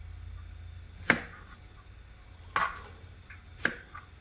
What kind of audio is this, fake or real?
real